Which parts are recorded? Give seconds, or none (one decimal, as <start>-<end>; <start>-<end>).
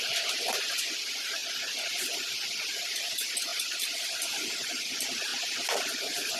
1.4-2.7; 5.3-5.8